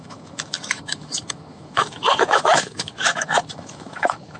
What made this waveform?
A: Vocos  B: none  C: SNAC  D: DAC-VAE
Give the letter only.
D